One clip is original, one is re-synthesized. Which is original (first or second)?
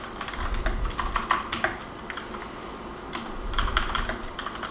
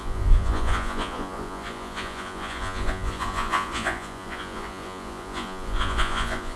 first